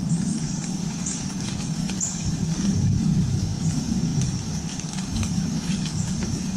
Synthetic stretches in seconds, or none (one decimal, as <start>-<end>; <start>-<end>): 0.0-6.6